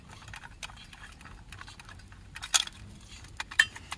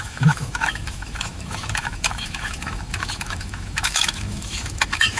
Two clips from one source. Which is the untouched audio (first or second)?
first